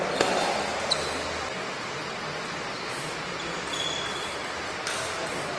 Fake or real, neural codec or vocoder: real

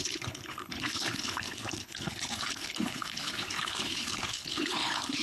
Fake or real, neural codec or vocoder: fake, codec, HILCodec